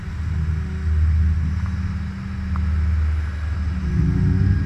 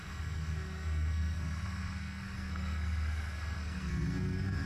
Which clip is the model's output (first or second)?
second